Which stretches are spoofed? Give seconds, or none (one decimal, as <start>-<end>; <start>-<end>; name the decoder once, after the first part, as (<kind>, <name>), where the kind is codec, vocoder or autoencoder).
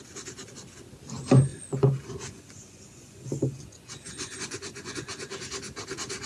1.5-5.3 (vocoder, Vocos)